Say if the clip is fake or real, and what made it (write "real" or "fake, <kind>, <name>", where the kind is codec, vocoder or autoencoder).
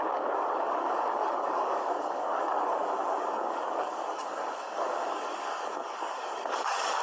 fake, codec, DAC